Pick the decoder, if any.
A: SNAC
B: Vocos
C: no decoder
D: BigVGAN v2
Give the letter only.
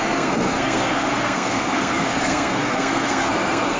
A